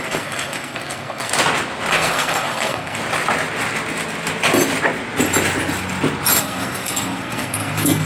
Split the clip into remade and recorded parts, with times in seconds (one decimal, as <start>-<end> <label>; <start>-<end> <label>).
0.0-1.3 remade; 1.3-1.9 recorded; 1.9-3.0 remade; 3.0-6.4 recorded; 6.4-8.1 remade